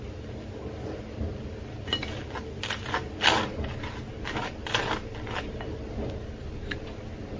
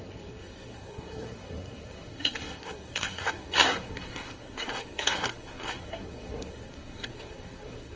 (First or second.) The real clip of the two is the first